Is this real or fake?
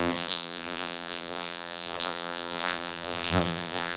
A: fake